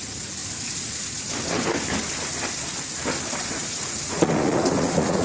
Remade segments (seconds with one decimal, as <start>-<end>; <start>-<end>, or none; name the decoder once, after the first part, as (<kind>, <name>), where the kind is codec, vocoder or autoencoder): 0.0-0.4 (vocoder, Vocos); 3.5-5.2